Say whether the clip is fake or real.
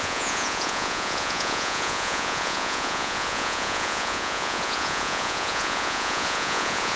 fake